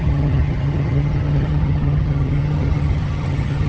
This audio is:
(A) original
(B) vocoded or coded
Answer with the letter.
B